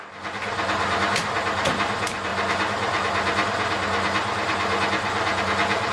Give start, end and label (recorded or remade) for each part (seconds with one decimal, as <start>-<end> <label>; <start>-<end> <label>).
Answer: 0.0-5.9 recorded